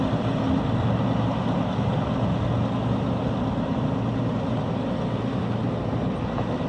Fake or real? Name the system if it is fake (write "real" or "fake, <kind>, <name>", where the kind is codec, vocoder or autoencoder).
real